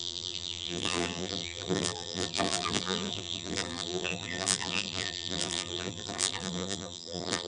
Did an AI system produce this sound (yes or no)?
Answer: yes